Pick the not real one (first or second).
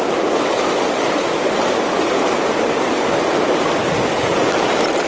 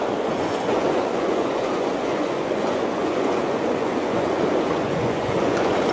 second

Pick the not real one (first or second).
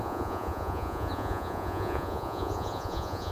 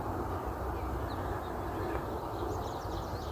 first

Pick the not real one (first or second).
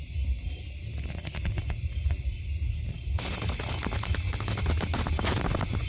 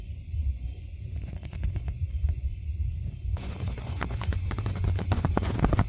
second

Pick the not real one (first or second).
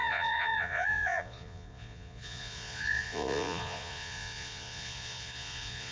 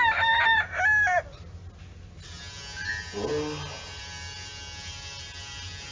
first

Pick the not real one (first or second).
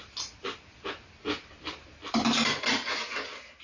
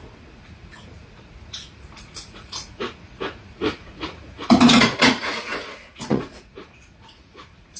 second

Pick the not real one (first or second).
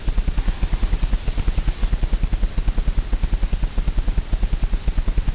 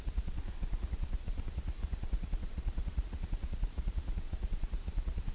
second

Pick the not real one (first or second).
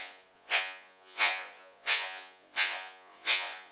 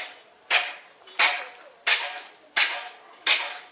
first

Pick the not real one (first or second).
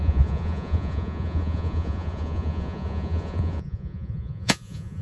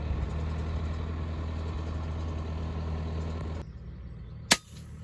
first